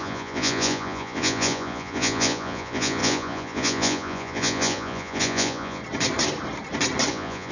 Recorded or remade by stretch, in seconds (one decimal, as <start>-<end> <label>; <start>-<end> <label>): 0.0-5.8 remade; 5.8-7.1 recorded; 7.1-7.5 remade